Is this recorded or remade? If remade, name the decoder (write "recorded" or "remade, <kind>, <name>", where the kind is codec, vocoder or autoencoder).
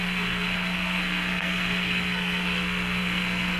remade, codec, SNAC